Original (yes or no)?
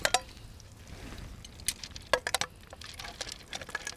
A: yes